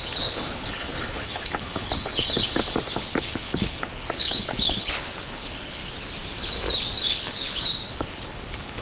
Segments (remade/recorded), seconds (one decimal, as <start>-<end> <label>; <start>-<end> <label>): 0.0-5.8 remade; 5.8-7.0 recorded; 7.0-8.8 remade